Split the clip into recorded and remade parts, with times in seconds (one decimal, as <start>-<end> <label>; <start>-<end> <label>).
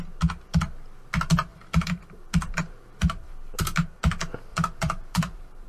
0.0-1.5 recorded; 1.5-3.3 remade; 3.3-4.5 recorded; 4.5-5.7 remade